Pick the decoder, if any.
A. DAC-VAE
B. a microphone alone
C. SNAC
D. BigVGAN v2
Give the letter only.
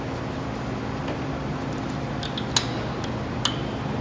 B